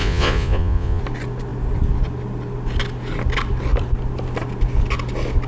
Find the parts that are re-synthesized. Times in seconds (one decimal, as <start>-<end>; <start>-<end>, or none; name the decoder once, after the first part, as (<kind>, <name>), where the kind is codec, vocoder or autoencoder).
0.0-1.0 (vocoder, Vocos)